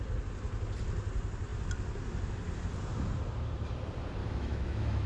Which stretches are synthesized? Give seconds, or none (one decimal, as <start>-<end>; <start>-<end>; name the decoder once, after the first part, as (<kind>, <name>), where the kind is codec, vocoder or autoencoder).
4.2-5.1 (autoencoder, DAC-VAE)